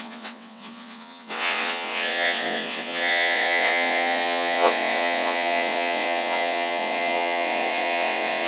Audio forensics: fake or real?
fake